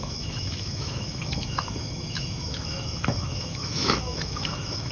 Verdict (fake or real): fake